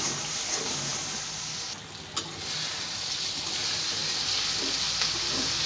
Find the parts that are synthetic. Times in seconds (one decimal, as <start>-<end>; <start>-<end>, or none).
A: none